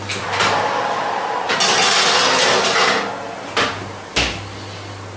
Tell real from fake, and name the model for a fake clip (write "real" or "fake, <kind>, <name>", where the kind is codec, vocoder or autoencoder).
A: real